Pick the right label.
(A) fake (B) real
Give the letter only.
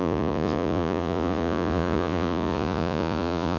A